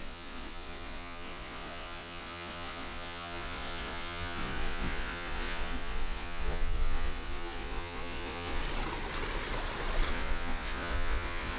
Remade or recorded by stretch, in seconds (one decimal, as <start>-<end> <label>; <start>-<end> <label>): 0.0-8.6 remade; 8.6-10.1 recorded; 10.1-11.6 remade

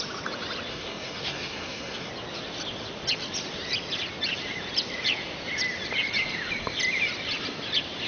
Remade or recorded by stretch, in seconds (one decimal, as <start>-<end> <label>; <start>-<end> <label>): 0.0-0.7 recorded; 0.7-2.1 remade; 2.1-8.1 recorded

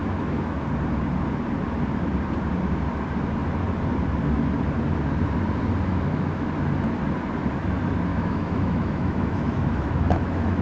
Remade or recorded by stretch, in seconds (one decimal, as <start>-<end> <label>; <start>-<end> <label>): 0.0-0.6 remade; 0.6-5.9 recorded; 5.9-6.5 remade; 6.5-8.1 recorded; 8.1-10.6 remade

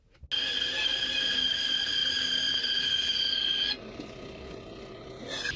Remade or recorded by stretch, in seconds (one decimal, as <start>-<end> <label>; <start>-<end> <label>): 0.0-5.6 recorded